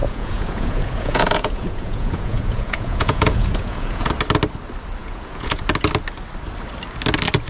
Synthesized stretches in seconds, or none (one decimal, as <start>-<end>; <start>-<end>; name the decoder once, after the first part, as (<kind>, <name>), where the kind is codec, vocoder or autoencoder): 0.0-4.1 (vocoder, Vocos); 5.0-5.6